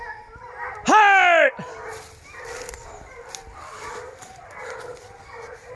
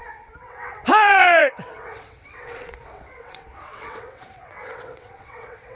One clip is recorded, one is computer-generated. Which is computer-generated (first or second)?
second